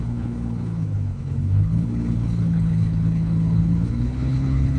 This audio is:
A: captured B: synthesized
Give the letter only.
B